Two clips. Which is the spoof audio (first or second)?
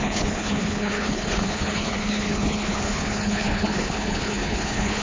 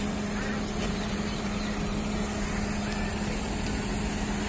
first